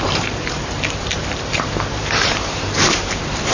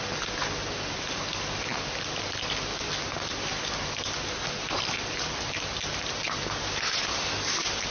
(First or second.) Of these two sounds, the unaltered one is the second